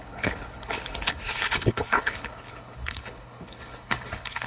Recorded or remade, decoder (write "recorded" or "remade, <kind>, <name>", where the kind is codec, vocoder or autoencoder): remade, codec, HILCodec